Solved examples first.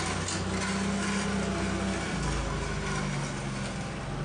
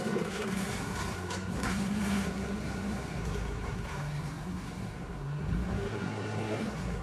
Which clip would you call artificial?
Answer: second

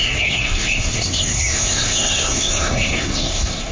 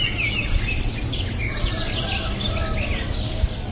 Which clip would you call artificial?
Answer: first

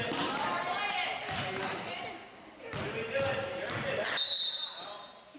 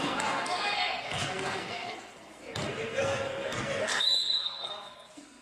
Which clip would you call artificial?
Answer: second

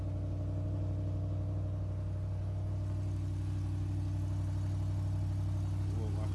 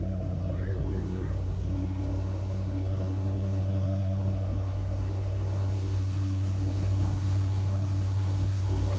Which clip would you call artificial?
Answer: second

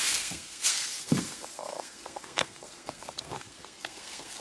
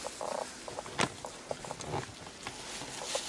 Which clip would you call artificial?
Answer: first